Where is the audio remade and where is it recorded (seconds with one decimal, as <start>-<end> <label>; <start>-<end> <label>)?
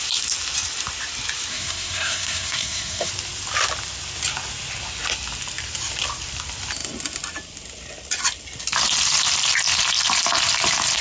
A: 0.0-1.5 recorded; 1.5-3.1 remade; 3.1-11.0 recorded